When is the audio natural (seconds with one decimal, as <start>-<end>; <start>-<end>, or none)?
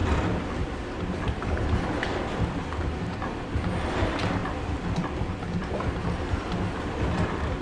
2.6-4.4; 5.7-7.6